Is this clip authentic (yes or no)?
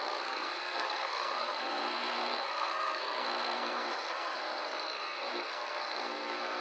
no